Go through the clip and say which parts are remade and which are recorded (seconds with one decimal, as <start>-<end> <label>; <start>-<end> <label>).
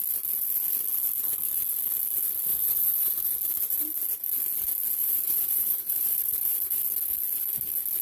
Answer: 0.0-2.5 recorded; 2.5-3.3 remade; 3.3-5.0 recorded; 5.0-6.6 remade; 6.6-8.0 recorded